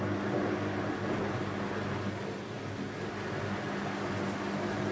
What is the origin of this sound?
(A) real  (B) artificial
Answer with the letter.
A